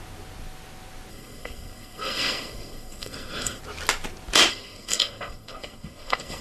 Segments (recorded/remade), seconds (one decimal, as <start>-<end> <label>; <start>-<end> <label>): 0.0-1.1 recorded; 1.1-3.6 remade; 3.6-4.5 recorded; 4.5-6.4 remade